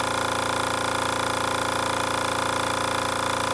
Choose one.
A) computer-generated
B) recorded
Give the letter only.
B